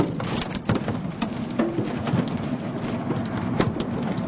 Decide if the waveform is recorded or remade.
recorded